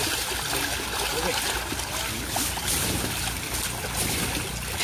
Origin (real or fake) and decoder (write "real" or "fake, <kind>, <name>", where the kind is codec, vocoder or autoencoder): real